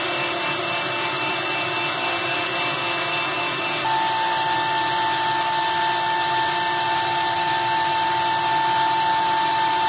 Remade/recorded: recorded